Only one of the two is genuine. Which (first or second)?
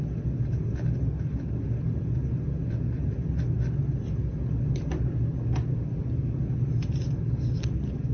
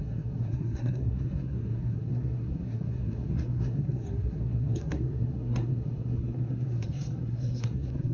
first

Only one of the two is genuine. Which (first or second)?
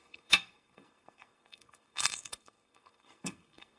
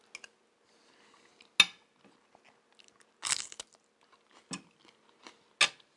second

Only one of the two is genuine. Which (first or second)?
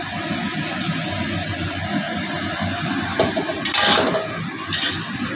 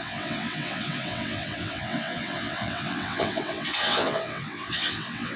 first